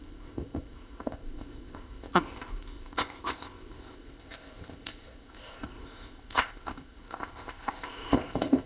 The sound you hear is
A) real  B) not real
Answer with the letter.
B